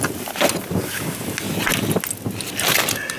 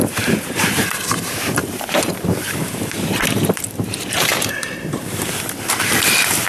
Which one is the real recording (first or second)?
first